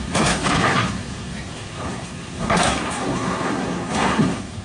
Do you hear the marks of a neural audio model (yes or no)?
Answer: yes